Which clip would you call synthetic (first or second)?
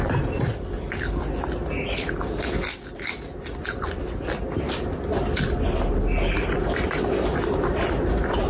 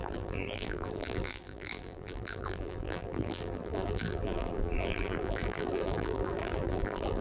second